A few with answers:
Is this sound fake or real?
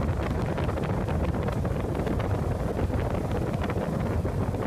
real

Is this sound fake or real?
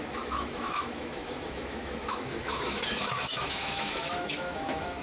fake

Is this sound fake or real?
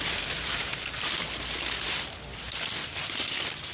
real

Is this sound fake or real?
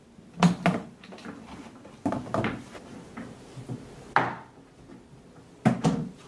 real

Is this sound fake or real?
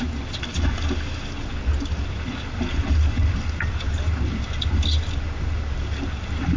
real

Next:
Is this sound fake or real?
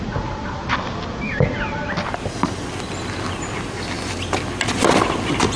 real